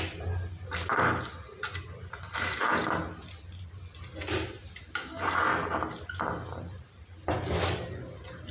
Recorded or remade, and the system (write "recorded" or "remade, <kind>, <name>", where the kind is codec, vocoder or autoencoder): recorded